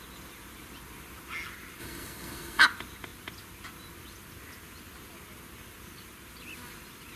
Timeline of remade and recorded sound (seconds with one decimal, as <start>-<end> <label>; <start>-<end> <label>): 0.0-1.8 recorded; 1.8-2.6 remade; 2.6-7.2 recorded